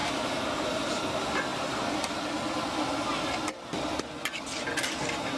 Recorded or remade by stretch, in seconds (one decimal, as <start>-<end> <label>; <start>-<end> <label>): 0.0-0.9 remade; 0.9-5.4 recorded